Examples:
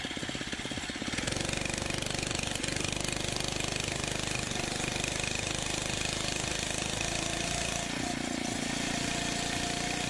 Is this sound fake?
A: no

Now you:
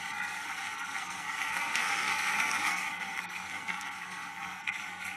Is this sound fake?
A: yes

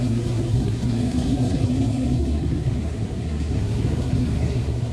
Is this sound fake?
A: yes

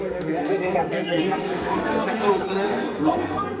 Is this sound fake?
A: yes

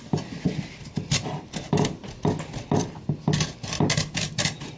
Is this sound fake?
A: no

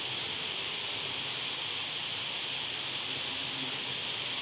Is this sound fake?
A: no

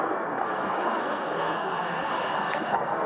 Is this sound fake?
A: yes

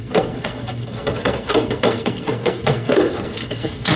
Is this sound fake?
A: yes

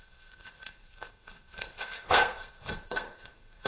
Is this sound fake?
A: yes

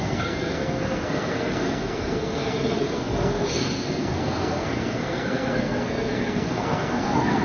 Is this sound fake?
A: yes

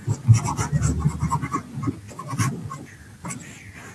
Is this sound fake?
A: no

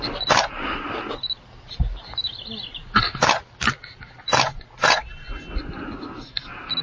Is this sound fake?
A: no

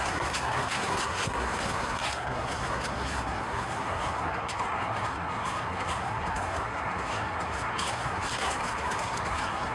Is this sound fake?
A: yes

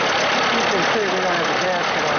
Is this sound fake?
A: no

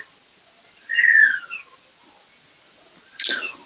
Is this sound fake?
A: no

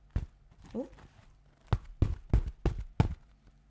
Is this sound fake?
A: no